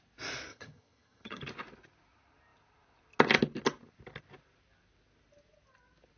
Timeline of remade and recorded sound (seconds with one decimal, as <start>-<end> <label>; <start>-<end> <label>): 0.0-0.5 recorded; 0.5-1.4 remade; 1.4-6.2 recorded